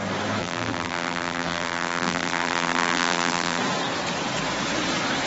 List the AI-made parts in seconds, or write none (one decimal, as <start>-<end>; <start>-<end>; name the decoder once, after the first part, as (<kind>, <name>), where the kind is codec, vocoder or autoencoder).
0.4-3.6 (vocoder, BigVGAN v2)